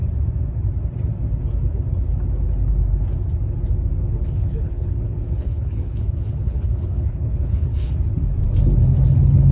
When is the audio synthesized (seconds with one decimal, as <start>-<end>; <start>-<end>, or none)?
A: 4.0-7.9